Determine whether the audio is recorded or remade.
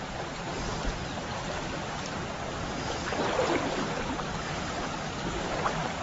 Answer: remade